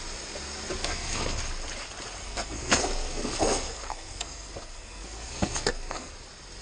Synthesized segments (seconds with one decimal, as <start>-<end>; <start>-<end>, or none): 0.8-1.4; 2.2-6.1